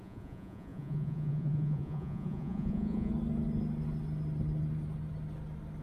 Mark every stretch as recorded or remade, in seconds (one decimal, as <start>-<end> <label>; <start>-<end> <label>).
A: 0.0-3.1 remade; 3.1-5.8 recorded